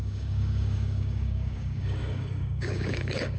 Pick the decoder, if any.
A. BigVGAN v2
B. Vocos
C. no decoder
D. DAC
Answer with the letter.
D